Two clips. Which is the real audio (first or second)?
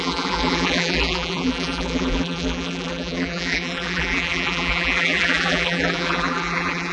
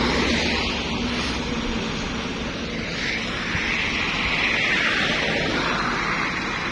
second